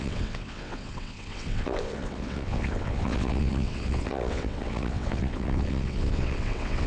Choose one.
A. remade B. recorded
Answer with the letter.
A